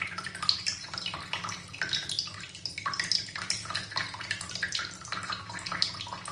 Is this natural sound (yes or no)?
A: yes